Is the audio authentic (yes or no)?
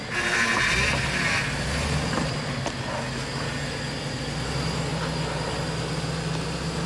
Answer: yes